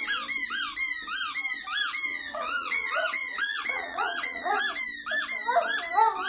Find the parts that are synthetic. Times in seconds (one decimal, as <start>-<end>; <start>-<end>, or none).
2.1-4.6